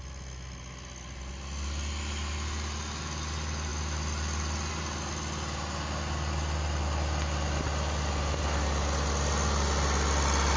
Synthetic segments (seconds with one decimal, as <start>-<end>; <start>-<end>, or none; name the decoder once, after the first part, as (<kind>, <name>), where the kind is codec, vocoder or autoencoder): none